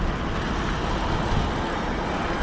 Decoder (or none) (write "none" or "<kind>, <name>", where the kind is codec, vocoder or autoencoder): none